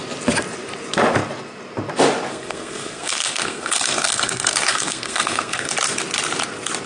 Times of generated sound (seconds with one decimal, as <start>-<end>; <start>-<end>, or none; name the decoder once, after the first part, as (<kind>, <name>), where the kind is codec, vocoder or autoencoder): 2.3-5.7 (codec, SNAC)